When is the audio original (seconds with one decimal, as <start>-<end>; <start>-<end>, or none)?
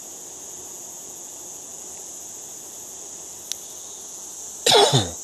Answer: 0.0-5.2